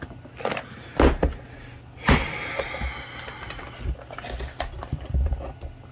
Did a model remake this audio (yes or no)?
no